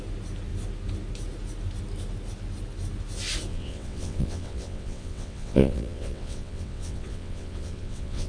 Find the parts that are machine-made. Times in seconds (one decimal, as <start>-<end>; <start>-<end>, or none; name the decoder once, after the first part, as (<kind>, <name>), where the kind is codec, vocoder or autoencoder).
3.5-8.3 (vocoder, WaveNeXt)